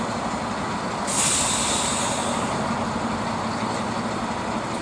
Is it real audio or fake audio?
real